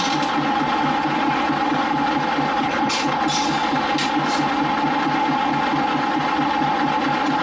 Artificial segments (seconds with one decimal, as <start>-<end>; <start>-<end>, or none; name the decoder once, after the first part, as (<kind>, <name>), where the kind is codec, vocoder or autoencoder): 2.6-3.2 (codec, HILCodec)